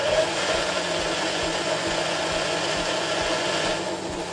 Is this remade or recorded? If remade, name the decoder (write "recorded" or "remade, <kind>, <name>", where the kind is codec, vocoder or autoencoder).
remade, vocoder, Vocos